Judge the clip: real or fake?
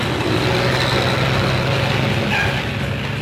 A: real